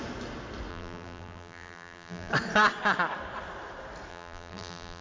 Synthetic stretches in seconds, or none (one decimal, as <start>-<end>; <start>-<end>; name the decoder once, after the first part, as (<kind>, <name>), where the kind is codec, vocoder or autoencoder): 0.7-2.3 (vocoder, BigVGAN v2); 4.1-5.0